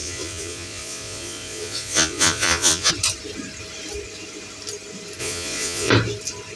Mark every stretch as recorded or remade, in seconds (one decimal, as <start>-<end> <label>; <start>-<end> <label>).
0.0-2.9 remade; 2.9-5.2 recorded; 5.2-5.9 remade; 5.9-6.6 recorded